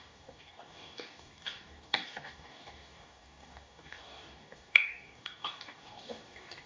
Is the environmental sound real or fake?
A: fake